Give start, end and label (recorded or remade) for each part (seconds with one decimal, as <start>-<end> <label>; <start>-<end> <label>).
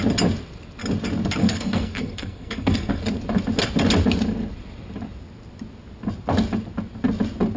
0.0-1.4 recorded; 1.4-3.0 remade; 3.0-7.6 recorded